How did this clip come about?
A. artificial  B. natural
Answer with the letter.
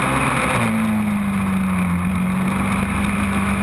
B